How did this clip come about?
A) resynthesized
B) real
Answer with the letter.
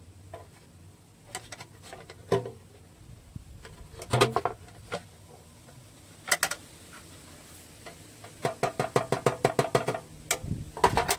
B